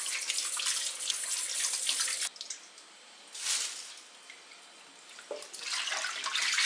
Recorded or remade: recorded